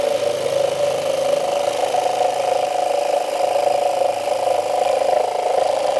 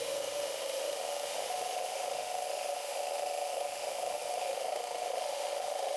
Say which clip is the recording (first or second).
first